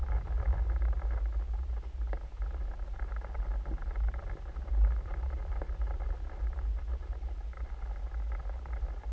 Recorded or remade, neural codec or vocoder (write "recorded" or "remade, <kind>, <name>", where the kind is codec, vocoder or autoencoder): recorded